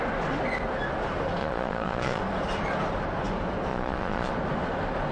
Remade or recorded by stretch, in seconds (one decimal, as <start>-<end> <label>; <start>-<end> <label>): 0.0-1.4 recorded; 1.4-2.2 remade; 2.2-3.7 recorded; 3.7-4.3 remade; 4.3-5.1 recorded